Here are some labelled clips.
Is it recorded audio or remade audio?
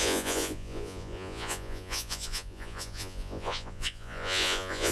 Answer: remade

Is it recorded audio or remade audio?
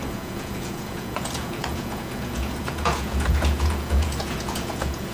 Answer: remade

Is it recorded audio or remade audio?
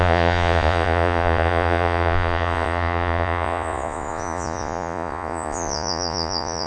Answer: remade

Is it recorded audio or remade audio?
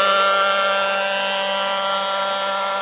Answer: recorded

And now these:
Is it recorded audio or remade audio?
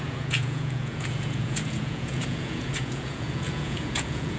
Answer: remade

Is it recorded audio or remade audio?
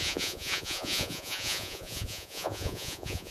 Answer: remade